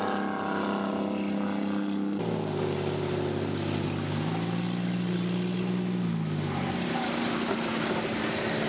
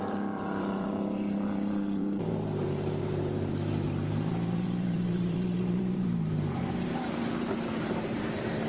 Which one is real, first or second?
first